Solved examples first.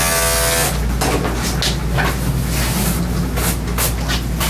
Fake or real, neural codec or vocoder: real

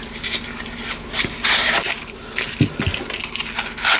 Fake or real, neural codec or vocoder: real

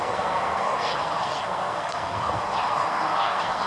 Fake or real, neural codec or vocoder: fake, codec, SNAC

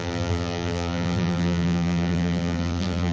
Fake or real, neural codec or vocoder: fake, vocoder, BigVGAN v2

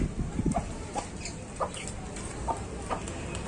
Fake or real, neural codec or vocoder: real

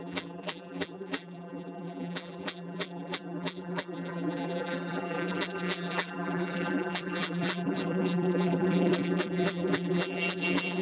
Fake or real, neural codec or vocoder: fake, vocoder, BigVGAN v2